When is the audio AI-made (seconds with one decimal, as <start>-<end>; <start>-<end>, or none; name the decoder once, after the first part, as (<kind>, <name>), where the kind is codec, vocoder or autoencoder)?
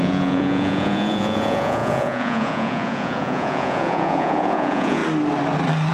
0.0-5.0 (vocoder, Vocos)